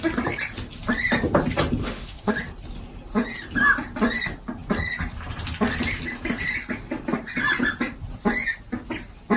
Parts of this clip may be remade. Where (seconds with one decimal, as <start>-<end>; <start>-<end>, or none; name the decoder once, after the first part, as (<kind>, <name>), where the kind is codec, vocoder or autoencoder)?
1.8-2.3 (autoencoder, DAC-VAE)